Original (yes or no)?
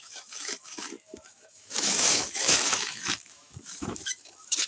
no